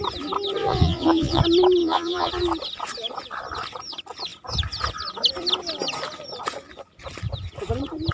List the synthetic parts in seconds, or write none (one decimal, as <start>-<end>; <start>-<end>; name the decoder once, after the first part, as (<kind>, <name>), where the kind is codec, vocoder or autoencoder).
0.6-1.4 (vocoder, Vocos); 1.8-2.3